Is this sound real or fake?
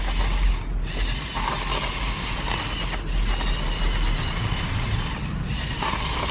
real